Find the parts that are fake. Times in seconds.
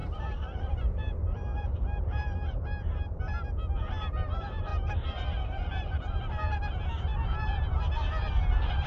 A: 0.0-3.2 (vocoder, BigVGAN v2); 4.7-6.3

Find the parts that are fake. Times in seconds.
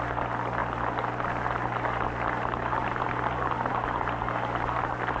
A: none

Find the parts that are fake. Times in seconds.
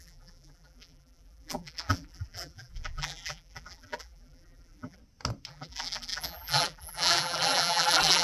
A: 0.0-5.0 (vocoder, BigVGAN v2); 5.5-8.2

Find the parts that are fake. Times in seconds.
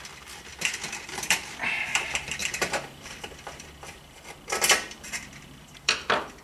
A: 0.0-6.4 (vocoder, BigVGAN v2)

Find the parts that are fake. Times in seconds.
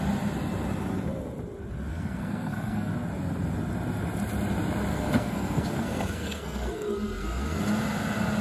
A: 1.9-2.9 (codec, SNAC); 4.9-7.6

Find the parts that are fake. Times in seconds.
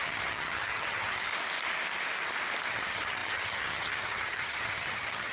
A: 0.0-1.3 (vocoder, HiFi-GAN); 2.7-5.3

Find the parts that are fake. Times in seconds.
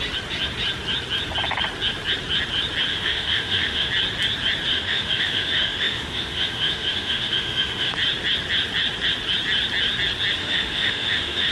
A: 2.9-3.9 (autoencoder, DAC-VAE); 4.7-7.9; 10.4-11.5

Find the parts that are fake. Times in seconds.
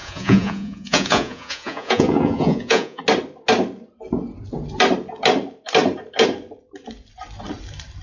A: 0.0-3.0 (vocoder, Vocos)